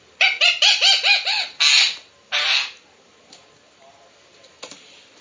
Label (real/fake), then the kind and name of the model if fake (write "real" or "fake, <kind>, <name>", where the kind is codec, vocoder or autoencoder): real